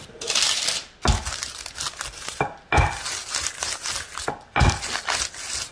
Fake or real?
real